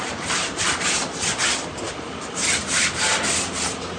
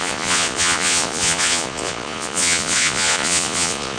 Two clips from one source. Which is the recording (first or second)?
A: first